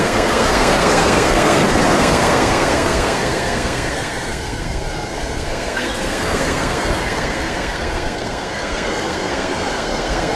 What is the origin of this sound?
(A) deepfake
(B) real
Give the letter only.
A